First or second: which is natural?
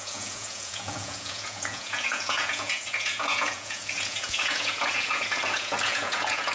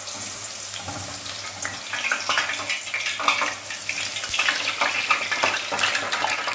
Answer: second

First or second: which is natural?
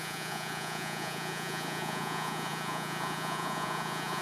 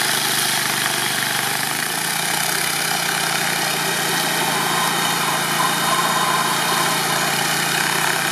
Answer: second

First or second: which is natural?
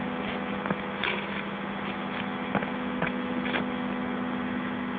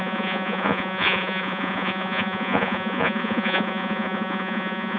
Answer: first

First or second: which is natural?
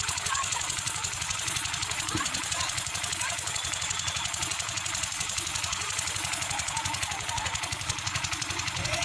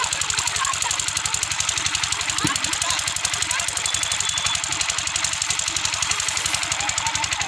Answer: second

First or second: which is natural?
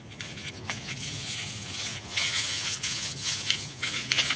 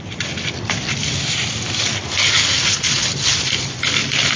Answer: second